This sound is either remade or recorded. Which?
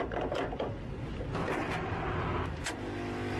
recorded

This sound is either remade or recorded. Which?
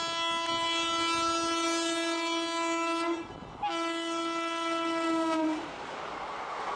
recorded